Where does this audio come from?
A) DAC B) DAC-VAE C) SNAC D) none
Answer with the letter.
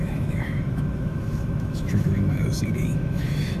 B